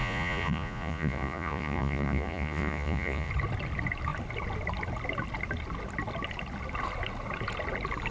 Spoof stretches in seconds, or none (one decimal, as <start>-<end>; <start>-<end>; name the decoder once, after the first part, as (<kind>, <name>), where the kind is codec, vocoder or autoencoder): 0.0-3.3 (vocoder, Vocos)